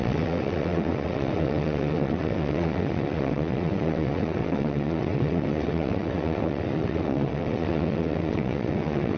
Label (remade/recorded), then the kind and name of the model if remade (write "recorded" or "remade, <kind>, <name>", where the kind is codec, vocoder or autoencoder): remade, vocoder, WaveNeXt